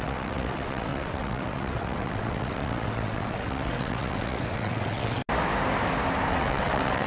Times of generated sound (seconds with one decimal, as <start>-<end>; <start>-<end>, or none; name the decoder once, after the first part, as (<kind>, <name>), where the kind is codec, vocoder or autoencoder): 0.0-5.2 (vocoder, WaveNeXt); 6.3-7.1

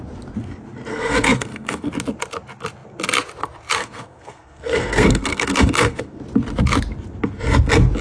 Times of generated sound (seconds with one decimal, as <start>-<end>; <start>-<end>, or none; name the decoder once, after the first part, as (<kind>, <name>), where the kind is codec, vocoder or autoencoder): 0.9-1.9 (codec, SNAC); 3.8-6.2

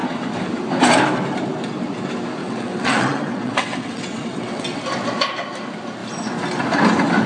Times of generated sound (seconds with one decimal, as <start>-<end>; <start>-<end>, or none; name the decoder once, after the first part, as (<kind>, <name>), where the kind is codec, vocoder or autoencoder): 2.4-4.8 (vocoder, WaveNeXt)